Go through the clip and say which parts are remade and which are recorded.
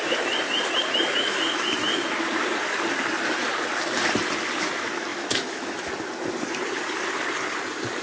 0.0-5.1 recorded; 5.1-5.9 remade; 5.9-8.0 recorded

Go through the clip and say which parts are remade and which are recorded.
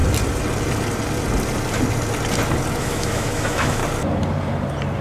0.0-2.8 recorded; 2.8-3.8 remade; 3.8-5.0 recorded